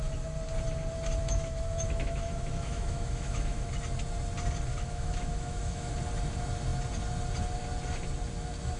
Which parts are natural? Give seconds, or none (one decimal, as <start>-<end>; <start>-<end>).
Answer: 0.0-1.2; 3.7-4.7; 5.9-8.8